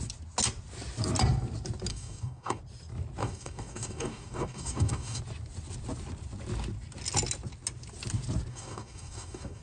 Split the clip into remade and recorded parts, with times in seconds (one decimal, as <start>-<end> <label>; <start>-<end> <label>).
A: 0.0-1.9 recorded; 1.9-2.6 remade; 2.6-3.2 recorded; 3.2-5.2 remade; 5.2-8.5 recorded; 8.5-9.6 remade

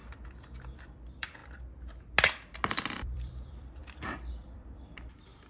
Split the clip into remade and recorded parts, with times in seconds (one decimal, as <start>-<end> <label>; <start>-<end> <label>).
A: 0.0-0.8 recorded; 0.8-1.4 remade; 1.4-2.7 recorded; 2.7-3.8 remade; 3.8-4.3 recorded; 4.3-5.5 remade

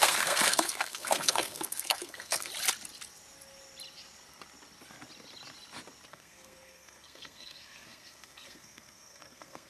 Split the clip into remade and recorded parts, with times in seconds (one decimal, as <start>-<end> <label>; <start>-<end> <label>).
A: 0.0-2.5 remade; 2.5-6.1 recorded; 6.1-9.7 remade

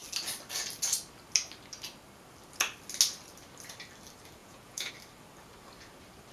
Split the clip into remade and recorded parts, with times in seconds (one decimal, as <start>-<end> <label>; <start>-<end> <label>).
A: 0.0-4.4 recorded; 4.4-4.9 remade; 4.9-6.3 recorded

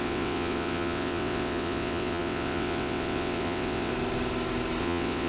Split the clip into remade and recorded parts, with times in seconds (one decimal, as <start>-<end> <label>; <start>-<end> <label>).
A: 0.0-3.9 remade; 3.9-4.8 recorded; 4.8-5.3 remade

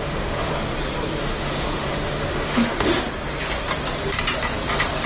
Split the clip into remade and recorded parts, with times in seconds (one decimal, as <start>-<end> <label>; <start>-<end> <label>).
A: 0.0-0.5 remade; 0.5-1.2 recorded; 1.2-2.9 remade; 2.9-5.1 recorded

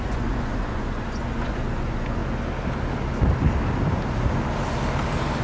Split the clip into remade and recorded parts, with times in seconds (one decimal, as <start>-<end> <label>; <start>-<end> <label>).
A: 0.0-2.2 remade; 2.2-5.4 recorded